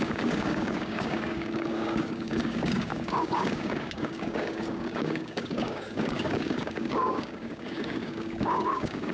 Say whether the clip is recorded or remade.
remade